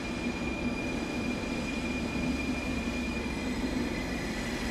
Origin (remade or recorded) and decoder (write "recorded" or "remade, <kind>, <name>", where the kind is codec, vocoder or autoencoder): recorded